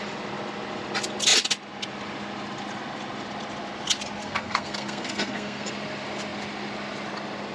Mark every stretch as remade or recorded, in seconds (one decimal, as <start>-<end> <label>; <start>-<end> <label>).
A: 0.0-4.2 recorded; 4.2-5.7 remade; 5.7-7.5 recorded